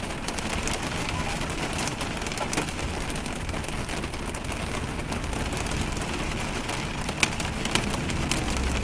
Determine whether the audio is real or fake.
real